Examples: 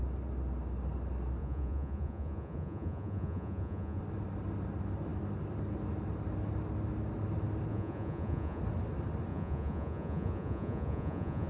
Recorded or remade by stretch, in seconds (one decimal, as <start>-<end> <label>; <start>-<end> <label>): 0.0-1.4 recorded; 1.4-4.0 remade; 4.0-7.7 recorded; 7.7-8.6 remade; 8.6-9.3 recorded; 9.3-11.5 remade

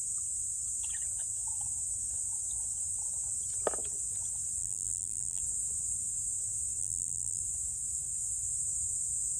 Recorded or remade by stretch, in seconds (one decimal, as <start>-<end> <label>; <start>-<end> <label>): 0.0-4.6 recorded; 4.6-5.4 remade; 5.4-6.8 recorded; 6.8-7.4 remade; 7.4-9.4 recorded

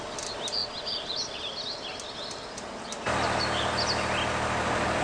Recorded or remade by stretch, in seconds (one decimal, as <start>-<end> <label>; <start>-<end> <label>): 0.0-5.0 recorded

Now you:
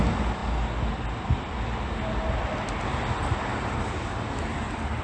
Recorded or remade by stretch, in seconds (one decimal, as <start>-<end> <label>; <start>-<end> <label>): 0.0-5.0 recorded